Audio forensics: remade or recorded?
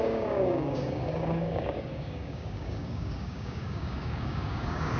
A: remade